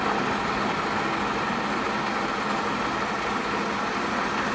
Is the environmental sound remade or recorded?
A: recorded